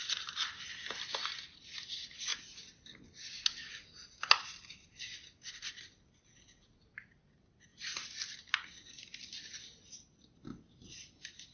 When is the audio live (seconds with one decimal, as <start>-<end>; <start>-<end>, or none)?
0.0-2.3; 3.0-11.5